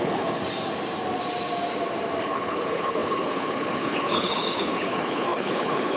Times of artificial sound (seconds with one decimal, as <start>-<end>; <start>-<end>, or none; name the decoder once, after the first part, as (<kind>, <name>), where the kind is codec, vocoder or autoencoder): 0.0-0.4 (codec, HILCodec); 2.2-6.0